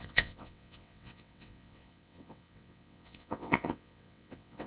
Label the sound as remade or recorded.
remade